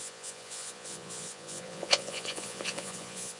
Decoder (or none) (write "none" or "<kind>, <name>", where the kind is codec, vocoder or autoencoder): vocoder, Vocos